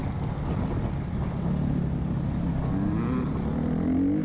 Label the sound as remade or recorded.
recorded